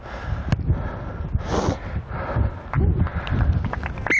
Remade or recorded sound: recorded